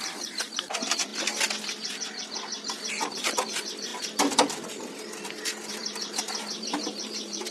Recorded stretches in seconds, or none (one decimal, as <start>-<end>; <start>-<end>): 1.1-2.9; 3.9-5.7